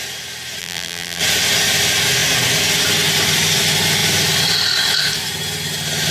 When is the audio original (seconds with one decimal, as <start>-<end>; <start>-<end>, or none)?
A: 0.0-0.6; 1.2-6.1